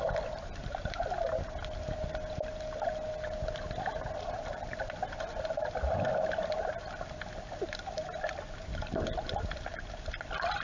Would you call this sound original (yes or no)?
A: yes